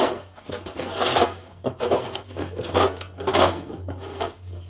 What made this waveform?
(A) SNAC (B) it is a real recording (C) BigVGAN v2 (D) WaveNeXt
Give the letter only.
A